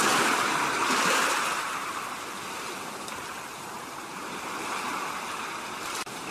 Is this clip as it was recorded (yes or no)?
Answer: yes